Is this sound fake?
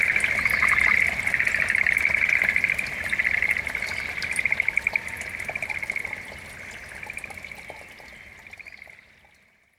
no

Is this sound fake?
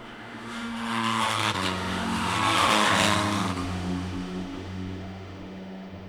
yes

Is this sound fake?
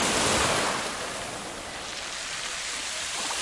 no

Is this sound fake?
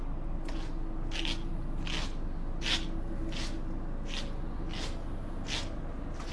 no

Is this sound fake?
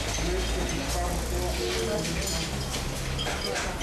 no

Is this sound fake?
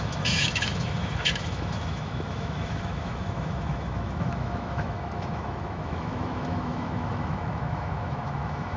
yes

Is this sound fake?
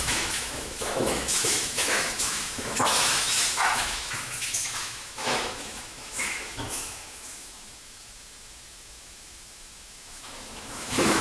yes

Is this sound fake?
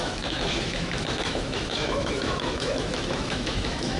yes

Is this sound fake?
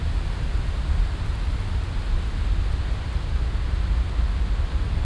no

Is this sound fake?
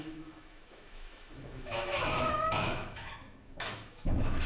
yes